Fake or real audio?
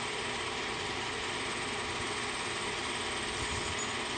real